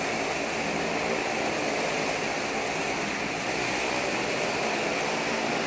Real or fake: real